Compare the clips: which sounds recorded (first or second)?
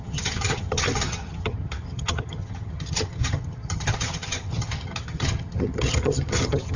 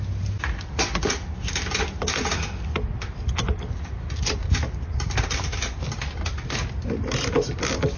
second